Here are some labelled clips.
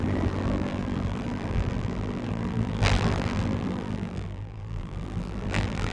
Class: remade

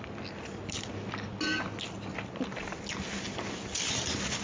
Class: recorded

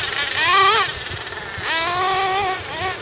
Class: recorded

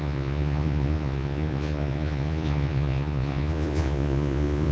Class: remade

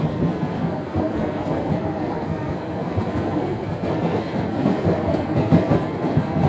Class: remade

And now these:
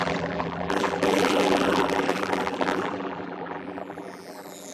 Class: remade